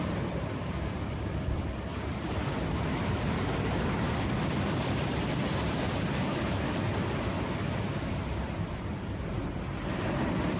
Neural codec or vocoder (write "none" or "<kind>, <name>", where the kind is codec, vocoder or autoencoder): none